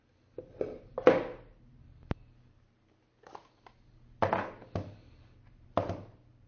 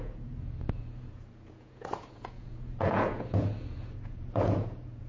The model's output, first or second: second